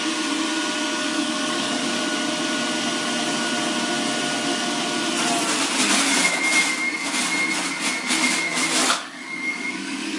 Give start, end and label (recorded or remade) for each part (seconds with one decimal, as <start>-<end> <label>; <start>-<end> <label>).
0.0-1.0 recorded; 1.0-2.0 remade; 2.0-8.8 recorded; 8.8-10.2 remade